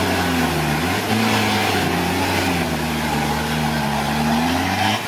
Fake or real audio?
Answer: real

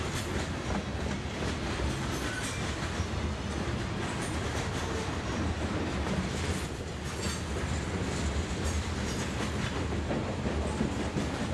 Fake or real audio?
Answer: real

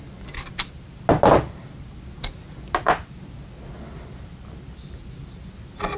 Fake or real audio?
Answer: real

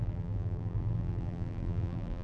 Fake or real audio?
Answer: fake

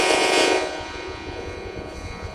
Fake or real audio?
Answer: fake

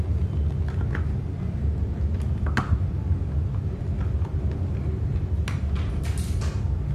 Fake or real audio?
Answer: real